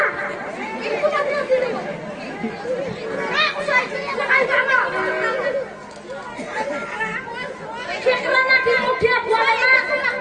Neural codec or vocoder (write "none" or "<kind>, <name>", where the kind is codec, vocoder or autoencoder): none